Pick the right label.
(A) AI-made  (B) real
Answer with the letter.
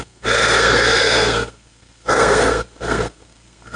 A